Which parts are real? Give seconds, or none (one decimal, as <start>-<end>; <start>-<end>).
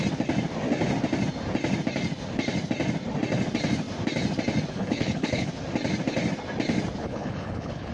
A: 0.0-4.7; 5.5-7.0